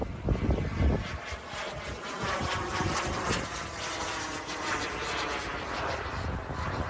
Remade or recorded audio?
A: recorded